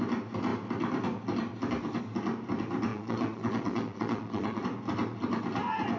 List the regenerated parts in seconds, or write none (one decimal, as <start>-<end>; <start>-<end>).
2.9-4.6